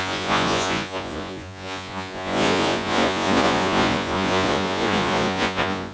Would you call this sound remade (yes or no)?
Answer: yes